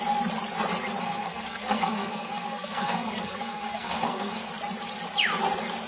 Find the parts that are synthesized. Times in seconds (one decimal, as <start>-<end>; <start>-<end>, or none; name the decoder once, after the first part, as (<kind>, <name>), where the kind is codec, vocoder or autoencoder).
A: 1.0-4.5 (codec, SNAC)